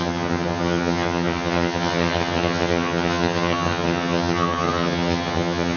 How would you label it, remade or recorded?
remade